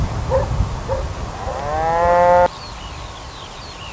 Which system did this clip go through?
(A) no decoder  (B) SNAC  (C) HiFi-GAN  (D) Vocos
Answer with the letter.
A